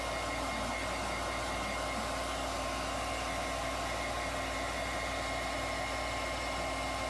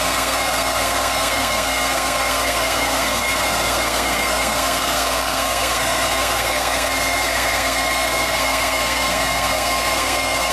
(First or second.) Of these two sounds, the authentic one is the first